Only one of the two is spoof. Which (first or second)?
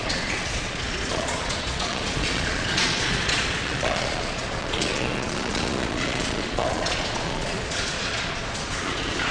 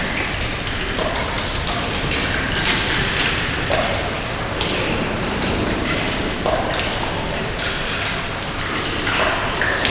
first